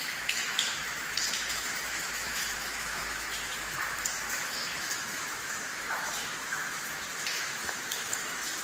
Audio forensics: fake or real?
fake